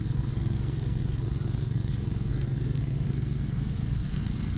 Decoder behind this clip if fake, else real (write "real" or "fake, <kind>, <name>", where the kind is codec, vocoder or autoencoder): fake, codec, SNAC